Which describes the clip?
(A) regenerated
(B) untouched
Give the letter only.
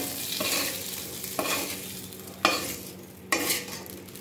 B